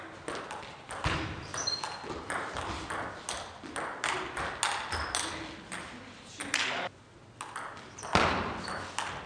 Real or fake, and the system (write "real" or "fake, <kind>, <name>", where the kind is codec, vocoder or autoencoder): real